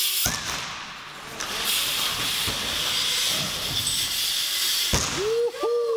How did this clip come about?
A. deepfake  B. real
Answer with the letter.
B